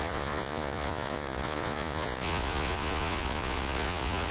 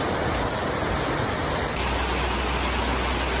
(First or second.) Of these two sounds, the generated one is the first